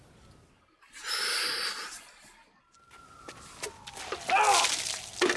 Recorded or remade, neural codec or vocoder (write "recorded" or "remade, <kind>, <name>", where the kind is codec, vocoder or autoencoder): recorded